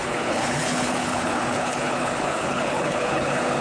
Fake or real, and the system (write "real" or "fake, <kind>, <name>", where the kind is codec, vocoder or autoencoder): fake, codec, HILCodec